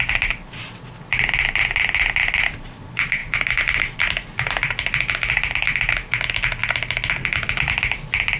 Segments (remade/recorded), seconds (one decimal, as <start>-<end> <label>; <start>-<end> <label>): 0.0-3.2 recorded; 3.2-4.1 remade; 4.1-8.4 recorded